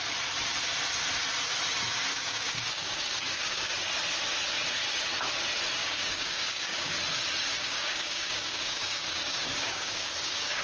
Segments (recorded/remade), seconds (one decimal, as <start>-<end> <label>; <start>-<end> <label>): 0.0-2.1 recorded; 2.1-3.7 remade; 3.7-5.8 recorded; 5.8-6.9 remade; 6.9-7.5 recorded; 7.5-10.6 remade